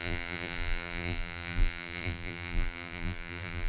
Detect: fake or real fake